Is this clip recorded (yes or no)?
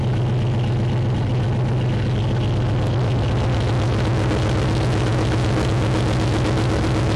yes